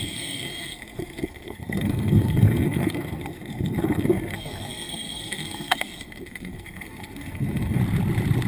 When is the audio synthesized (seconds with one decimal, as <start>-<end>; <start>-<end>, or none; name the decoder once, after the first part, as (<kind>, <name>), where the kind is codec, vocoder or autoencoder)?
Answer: 0.0-7.8 (codec, SNAC)